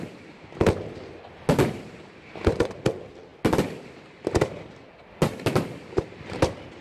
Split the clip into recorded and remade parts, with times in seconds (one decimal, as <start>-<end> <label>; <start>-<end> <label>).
0.0-6.8 recorded